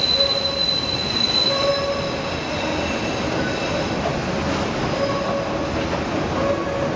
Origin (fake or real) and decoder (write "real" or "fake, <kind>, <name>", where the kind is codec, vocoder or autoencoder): real